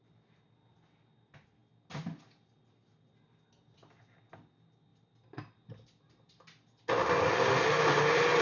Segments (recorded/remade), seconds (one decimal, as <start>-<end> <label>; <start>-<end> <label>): 0.0-8.4 recorded